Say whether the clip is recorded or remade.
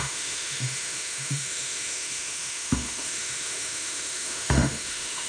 remade